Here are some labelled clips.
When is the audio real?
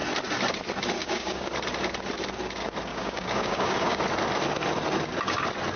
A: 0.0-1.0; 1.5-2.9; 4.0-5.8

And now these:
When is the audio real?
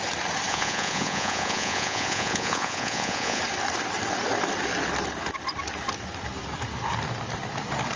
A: 0.0-0.5; 3.4-8.0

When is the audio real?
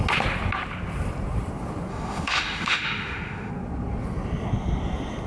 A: 0.0-1.9; 3.5-5.3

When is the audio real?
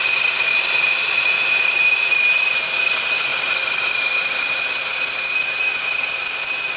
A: 0.0-6.8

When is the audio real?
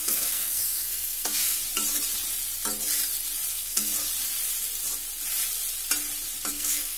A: 1.6-3.5; 3.9-6.5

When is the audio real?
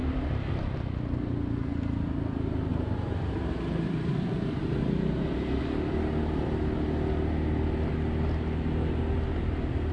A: 0.0-2.7; 5.6-9.9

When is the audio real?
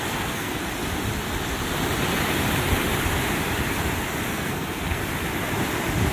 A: 0.6-4.3; 5.0-6.1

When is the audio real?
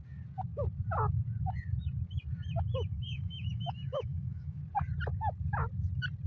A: 0.0-2.9; 4.6-6.3